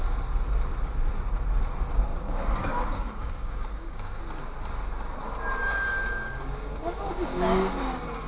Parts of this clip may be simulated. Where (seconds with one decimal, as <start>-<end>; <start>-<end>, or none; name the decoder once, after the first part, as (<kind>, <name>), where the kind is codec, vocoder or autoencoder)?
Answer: 2.1-4.2 (codec, DAC); 5.6-7.8